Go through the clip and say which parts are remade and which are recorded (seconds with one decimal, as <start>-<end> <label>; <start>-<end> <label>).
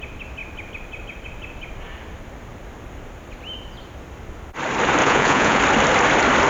0.0-5.0 recorded; 5.0-5.6 remade; 5.6-6.5 recorded